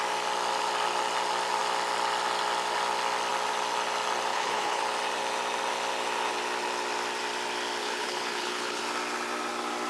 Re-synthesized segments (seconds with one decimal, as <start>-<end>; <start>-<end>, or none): 4.3-4.8; 7.8-8.8